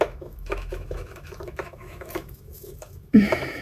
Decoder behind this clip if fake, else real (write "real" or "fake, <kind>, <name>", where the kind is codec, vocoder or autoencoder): fake, autoencoder, DAC-VAE